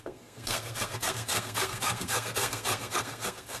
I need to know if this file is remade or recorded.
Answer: remade